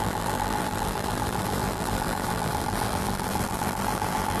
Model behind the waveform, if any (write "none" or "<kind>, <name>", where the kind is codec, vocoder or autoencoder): vocoder, BigVGAN v2